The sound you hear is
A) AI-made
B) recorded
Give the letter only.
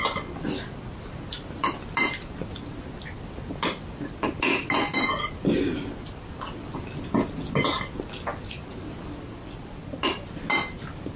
B